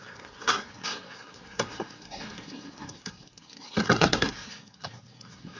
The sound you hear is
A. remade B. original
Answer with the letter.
A